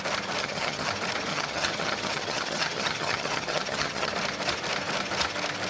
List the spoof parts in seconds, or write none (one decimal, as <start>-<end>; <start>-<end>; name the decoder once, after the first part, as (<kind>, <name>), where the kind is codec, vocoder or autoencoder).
0.4-0.9 (vocoder, HiFi-GAN); 1.3-4.1